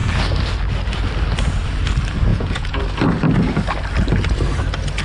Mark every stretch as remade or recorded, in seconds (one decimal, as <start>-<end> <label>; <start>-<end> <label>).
0.0-2.3 recorded; 2.3-2.8 remade; 2.8-5.0 recorded